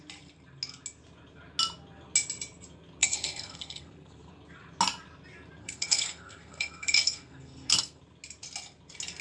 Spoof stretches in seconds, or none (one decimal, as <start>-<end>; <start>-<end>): 3.0-4.3; 5.6-8.0